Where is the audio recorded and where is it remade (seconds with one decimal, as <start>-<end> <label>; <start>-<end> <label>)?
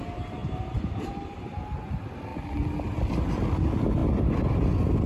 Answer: 0.0-0.4 recorded; 0.4-1.6 remade; 1.6-5.1 recorded